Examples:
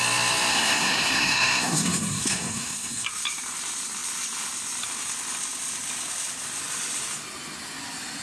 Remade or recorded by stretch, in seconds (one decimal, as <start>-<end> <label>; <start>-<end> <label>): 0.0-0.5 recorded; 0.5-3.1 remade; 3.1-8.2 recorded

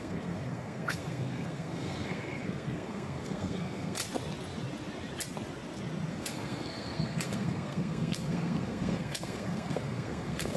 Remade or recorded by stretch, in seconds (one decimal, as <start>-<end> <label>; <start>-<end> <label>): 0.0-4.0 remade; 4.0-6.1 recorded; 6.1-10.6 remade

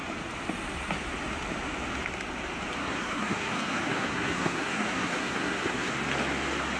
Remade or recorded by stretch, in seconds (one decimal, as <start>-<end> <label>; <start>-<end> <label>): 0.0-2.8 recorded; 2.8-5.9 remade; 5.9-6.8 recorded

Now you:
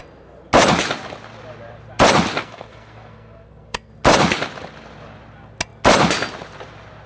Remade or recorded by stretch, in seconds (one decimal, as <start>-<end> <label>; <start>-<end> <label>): 0.0-2.4 recorded; 2.4-3.9 remade; 3.9-7.1 recorded

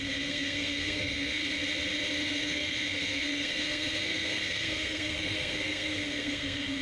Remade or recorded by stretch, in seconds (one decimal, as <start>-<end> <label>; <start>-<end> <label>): 0.0-1.4 remade; 1.4-2.3 recorded; 2.3-6.8 remade

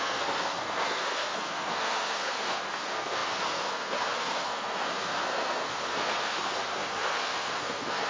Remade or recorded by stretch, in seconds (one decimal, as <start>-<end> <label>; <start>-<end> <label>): 0.0-8.1 remade

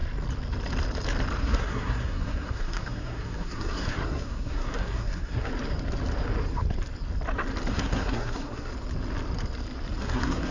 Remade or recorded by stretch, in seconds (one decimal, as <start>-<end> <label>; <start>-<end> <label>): 0.0-1.4 recorded; 1.4-5.5 remade; 5.5-7.7 recorded; 7.7-8.7 remade; 8.7-10.0 recorded; 10.0-10.5 remade

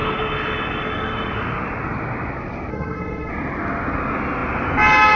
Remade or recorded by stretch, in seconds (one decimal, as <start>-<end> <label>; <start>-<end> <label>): 0.0-2.7 recorded; 2.7-3.3 remade; 3.3-5.2 recorded